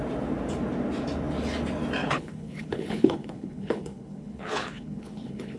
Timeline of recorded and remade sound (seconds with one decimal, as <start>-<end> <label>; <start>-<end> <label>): 0.0-2.0 recorded; 2.0-5.6 remade